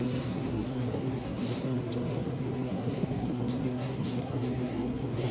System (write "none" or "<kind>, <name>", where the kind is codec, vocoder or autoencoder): codec, SNAC